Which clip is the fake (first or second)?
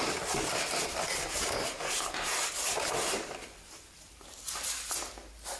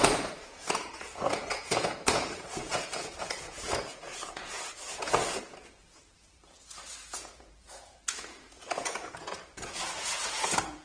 second